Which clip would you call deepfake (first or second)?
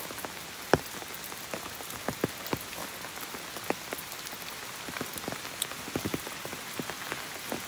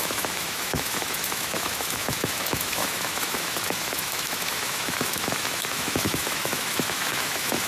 second